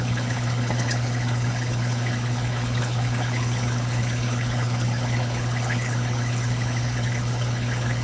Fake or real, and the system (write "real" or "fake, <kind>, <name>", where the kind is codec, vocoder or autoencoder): fake, codec, HILCodec